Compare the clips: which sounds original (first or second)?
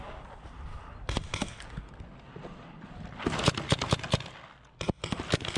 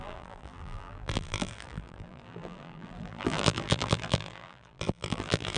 first